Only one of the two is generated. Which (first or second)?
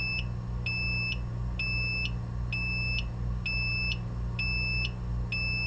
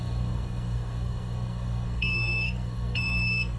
second